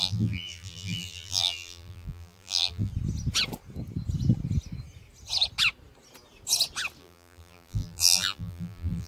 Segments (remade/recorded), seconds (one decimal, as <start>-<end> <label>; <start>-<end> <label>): 0.0-2.9 remade; 2.9-7.0 recorded; 7.0-9.1 remade